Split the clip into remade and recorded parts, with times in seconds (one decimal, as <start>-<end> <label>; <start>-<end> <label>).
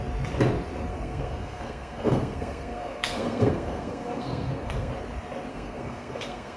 0.0-0.9 recorded; 0.9-4.9 remade; 4.9-5.5 recorded; 5.5-6.6 remade